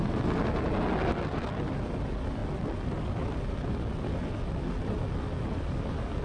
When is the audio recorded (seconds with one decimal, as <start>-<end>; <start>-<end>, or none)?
0.0-6.2